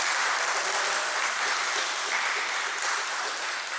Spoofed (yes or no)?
yes